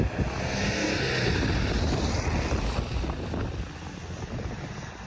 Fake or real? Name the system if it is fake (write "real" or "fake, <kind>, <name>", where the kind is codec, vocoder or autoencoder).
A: real